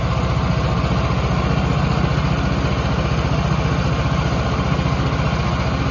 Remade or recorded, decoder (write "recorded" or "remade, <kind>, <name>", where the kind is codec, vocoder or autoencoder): recorded